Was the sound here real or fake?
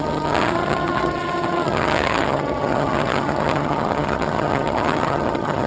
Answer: fake